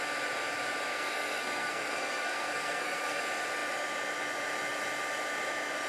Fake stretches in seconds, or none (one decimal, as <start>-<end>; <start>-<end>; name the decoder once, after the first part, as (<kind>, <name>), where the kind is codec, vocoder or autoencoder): 0.9-3.2 (codec, SNAC)

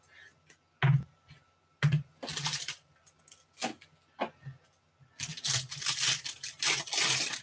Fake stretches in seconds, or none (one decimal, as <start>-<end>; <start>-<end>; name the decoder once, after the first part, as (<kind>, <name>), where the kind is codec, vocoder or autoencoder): 2.4-3.2 (vocoder, BigVGAN v2); 5.3-7.4

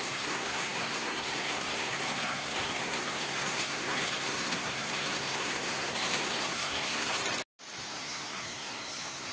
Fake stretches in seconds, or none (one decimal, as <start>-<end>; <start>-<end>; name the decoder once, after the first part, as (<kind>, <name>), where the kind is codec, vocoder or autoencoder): 0.0-7.2 (codec, SNAC); 7.9-9.3

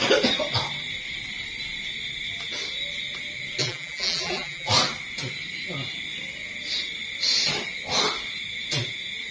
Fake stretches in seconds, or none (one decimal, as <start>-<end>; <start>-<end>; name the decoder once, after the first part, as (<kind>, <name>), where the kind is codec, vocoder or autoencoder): 3.6-4.7 (vocoder, BigVGAN v2)

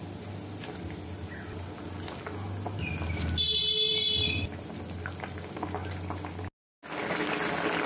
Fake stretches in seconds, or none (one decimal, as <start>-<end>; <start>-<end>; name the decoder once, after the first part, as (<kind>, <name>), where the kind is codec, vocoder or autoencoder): none

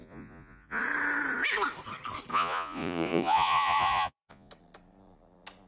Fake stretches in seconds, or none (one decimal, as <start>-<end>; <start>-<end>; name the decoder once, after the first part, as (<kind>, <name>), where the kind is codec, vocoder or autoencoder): 0.0-0.8 (vocoder, Vocos); 2.3-4.5

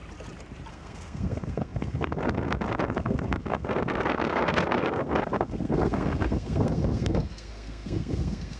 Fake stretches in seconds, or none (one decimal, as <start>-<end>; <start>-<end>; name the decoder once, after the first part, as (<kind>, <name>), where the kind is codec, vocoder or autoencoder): 0.7-8.6 (codec, SNAC)

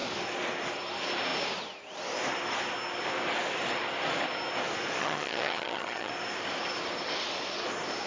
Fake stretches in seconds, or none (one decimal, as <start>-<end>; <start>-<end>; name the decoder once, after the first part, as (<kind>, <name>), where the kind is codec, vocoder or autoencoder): 5.0-6.1 (vocoder, HiFi-GAN)